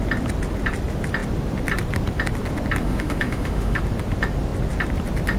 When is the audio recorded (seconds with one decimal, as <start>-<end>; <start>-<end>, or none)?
0.0-2.8; 3.8-5.4